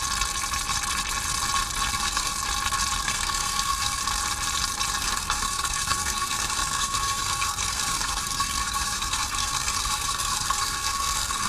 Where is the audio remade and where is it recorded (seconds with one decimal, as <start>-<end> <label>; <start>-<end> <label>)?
0.0-1.9 recorded; 1.9-2.3 remade; 2.3-3.0 recorded; 3.0-4.0 remade; 4.0-5.0 recorded; 5.0-11.5 remade